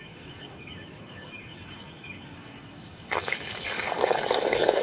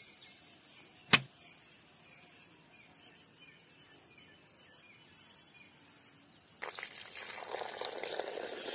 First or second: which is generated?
first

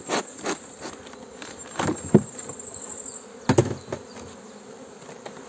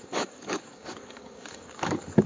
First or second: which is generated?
second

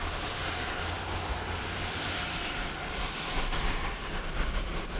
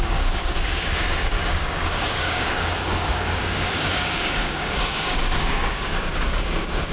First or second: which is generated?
second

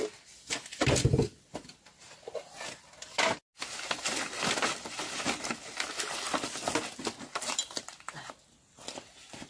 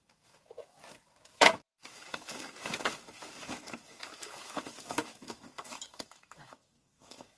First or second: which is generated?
second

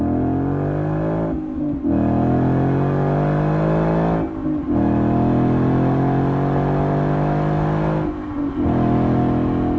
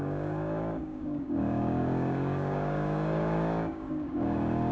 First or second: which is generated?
second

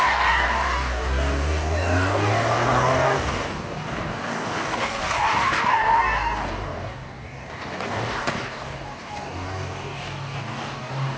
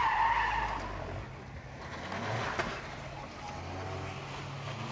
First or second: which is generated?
first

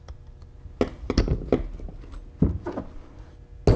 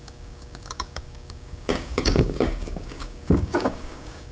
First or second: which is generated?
second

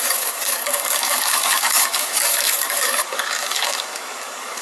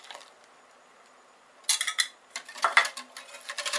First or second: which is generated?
first